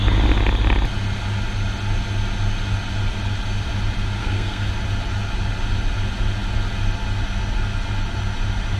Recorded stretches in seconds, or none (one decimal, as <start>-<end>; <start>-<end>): 0.0-4.2; 4.7-8.8